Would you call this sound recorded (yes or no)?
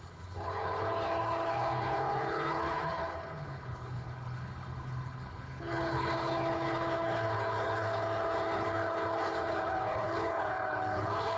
no